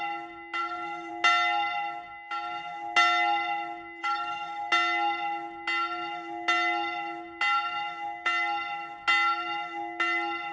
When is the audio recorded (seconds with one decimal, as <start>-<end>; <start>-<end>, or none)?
0.0-0.6; 1.1-4.0; 4.7-10.5

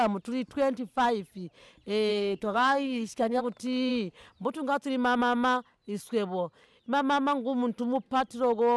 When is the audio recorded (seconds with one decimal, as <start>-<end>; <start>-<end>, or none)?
0.0-2.1; 3.4-8.8